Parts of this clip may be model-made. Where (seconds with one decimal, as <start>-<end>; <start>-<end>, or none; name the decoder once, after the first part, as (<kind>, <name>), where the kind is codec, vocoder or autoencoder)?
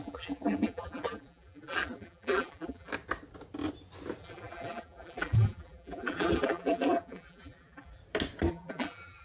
0.0-2.9 (vocoder, BigVGAN v2); 4.2-8.0; 8.5-9.2